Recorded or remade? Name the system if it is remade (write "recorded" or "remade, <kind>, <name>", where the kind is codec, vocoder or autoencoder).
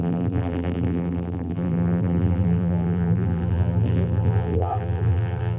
remade, vocoder, BigVGAN v2